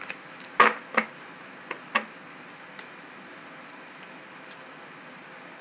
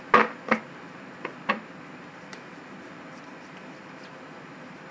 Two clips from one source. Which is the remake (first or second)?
second